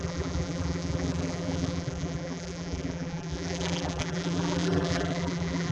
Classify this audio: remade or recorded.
remade